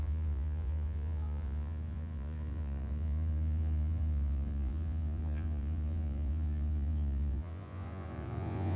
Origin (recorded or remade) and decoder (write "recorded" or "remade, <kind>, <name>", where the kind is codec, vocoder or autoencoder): remade, vocoder, Vocos